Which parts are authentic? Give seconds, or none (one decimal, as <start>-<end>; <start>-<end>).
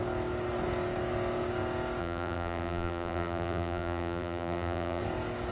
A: 0.0-2.0; 5.0-5.5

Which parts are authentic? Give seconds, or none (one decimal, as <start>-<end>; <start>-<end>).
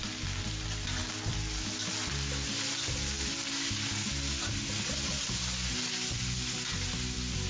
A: 0.0-7.5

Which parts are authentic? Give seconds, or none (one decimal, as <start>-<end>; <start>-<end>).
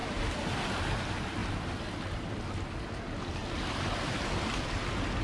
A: 0.6-5.2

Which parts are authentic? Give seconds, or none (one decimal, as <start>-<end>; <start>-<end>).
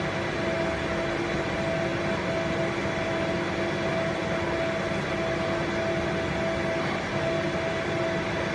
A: 0.0-8.5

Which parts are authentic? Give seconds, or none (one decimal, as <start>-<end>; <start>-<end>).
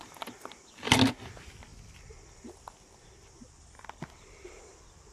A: 0.0-5.1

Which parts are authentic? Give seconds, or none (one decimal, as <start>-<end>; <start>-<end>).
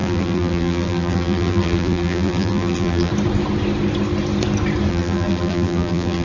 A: 3.1-4.9